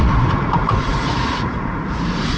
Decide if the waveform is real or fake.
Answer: fake